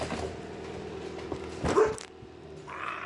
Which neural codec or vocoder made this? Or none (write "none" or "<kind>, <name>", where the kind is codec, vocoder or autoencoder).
none